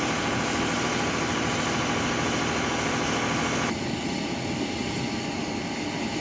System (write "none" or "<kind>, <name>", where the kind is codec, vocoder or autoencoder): none